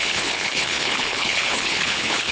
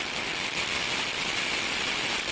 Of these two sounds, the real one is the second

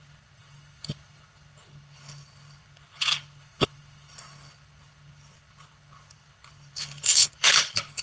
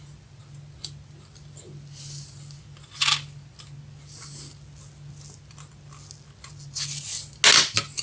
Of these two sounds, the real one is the second